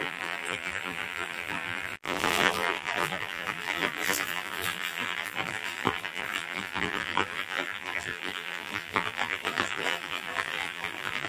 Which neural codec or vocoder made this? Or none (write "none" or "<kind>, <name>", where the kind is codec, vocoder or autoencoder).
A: vocoder, BigVGAN v2